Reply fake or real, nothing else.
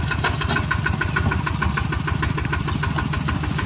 real